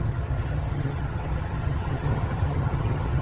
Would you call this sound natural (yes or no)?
no